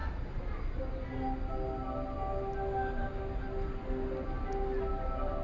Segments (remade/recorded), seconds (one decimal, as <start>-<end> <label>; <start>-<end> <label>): 0.0-5.4 recorded